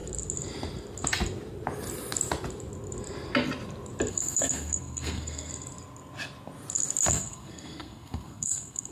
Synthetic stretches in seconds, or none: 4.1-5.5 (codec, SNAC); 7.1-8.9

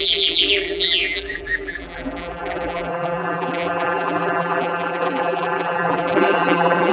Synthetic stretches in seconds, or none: 0.0-6.9 (vocoder, BigVGAN v2)

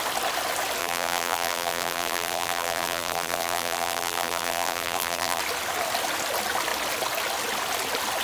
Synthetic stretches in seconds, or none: 0.8-5.4 (vocoder, BigVGAN v2)

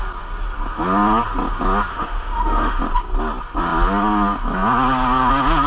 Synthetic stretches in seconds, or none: 1.9-2.8 (autoencoder, DAC-VAE)

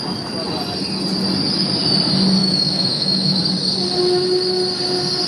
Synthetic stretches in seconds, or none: 2.4-3.4 (autoencoder, DAC-VAE)

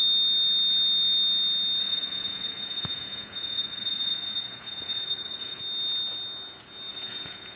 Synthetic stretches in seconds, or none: 1.8-5.6 (vocoder, Vocos); 6.9-7.6

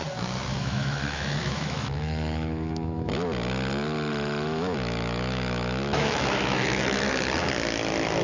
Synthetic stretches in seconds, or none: 0.5-3.1 (autoencoder, DAC-VAE); 4.1-7.1